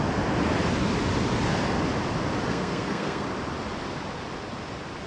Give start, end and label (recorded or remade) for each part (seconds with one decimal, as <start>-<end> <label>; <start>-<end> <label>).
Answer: 0.0-2.5 recorded; 2.5-3.3 remade; 3.3-5.1 recorded